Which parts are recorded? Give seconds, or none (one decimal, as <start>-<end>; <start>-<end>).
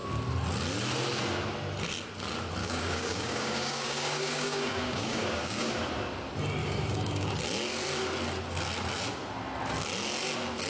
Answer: 0.0-2.6; 5.8-6.6; 7.4-10.7